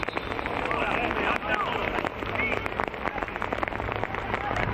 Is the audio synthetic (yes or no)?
no